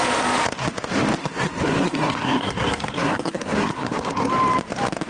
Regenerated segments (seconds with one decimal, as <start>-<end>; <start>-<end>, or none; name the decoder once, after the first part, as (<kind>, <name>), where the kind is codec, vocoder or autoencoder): 1.2-4.3 (codec, SNAC)